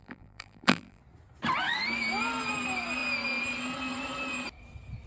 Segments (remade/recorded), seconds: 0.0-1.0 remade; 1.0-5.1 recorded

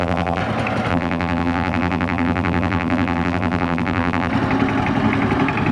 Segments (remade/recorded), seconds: 0.0-0.4 remade; 0.4-0.9 recorded; 0.9-4.3 remade; 4.3-5.7 recorded

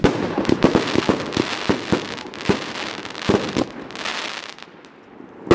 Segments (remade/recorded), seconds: 0.0-5.5 recorded

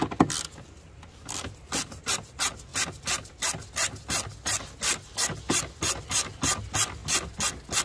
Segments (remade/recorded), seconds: 0.0-7.8 recorded

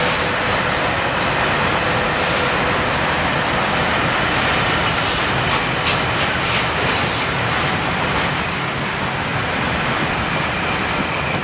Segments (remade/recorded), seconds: 0.0-9.3 recorded; 9.3-10.3 remade; 10.3-11.4 recorded

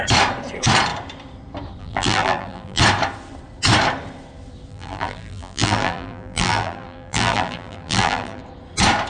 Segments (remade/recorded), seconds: 0.0-1.8 recorded; 1.8-2.8 remade; 2.8-4.7 recorded; 4.7-8.4 remade; 8.4-9.1 recorded